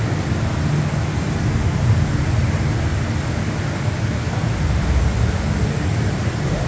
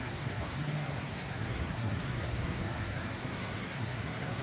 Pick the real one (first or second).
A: first